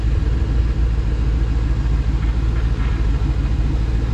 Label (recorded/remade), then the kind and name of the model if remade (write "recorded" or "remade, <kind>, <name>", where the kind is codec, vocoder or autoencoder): recorded